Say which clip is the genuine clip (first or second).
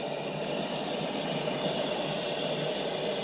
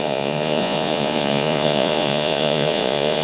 first